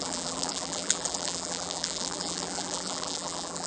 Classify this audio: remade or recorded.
remade